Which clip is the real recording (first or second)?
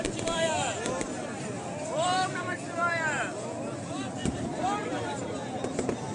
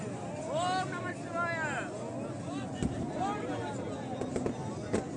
second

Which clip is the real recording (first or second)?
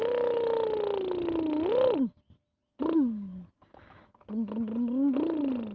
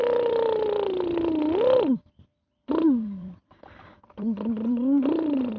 first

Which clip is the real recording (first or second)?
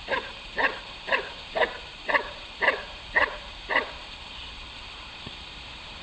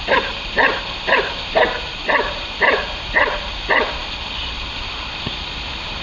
second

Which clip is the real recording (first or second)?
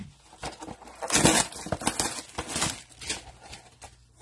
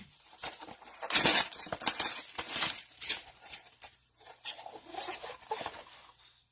first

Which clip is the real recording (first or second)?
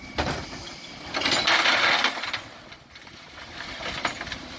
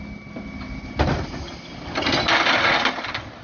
second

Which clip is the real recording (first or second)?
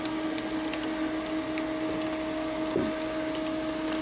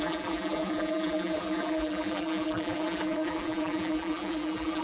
first